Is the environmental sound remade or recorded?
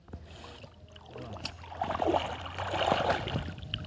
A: recorded